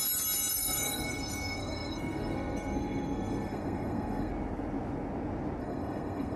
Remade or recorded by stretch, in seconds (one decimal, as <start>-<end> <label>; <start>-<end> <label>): 0.0-0.5 recorded; 0.5-4.3 remade; 4.3-5.6 recorded; 5.6-6.4 remade